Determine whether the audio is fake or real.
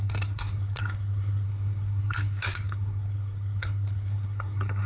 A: fake